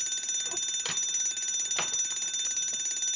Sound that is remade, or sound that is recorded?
recorded